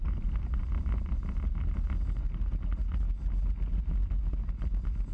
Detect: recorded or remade recorded